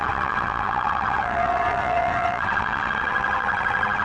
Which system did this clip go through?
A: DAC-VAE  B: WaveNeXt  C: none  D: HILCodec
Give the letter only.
B